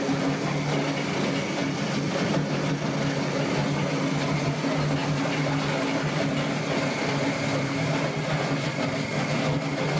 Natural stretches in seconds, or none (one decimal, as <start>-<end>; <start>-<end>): 0.0-10.0